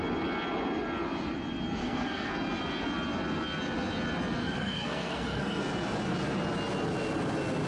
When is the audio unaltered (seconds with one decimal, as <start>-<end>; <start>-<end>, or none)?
0.0-1.8; 2.3-4.4; 5.6-7.7